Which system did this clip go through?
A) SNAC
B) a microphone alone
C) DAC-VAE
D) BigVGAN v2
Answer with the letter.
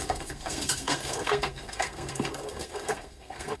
A